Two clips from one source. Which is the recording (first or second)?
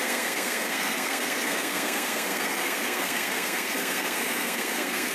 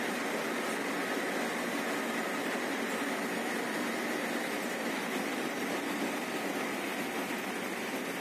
second